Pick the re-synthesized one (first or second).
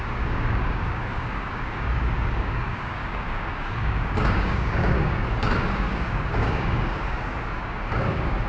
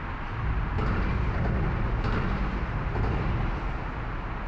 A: first